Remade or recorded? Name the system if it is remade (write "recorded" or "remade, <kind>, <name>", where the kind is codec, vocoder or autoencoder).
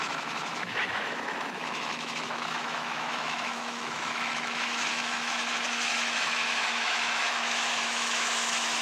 remade, autoencoder, DAC-VAE